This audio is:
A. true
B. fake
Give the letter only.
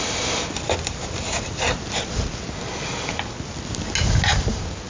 A